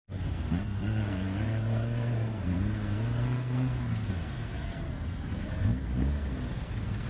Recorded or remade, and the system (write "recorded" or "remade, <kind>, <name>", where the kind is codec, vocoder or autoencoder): remade, codec, SNAC